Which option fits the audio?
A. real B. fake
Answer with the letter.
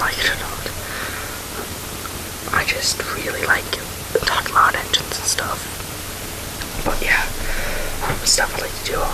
A